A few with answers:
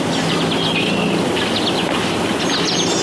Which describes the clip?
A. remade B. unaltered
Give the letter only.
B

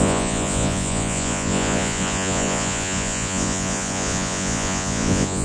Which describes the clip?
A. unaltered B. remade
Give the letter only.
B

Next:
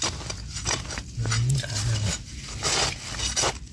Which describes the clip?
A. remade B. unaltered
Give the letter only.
B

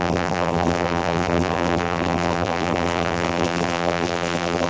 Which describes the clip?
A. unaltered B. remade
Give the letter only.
B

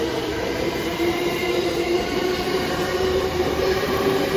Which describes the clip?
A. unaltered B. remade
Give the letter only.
B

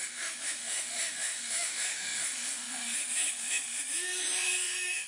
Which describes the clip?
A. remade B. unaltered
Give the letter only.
A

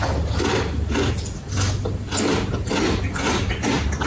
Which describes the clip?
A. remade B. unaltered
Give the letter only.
B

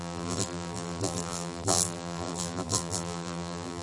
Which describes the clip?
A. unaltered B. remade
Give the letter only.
B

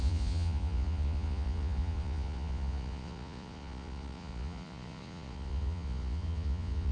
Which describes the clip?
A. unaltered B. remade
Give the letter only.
B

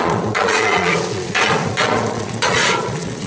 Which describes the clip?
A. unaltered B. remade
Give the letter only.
B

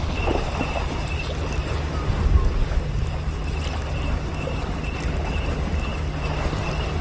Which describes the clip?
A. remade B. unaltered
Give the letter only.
B